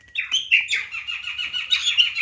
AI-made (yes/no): no